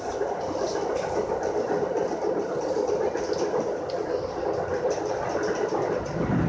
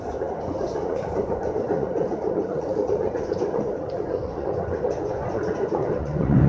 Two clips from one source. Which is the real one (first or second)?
first